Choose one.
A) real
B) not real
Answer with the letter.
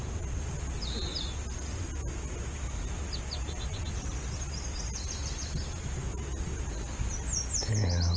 A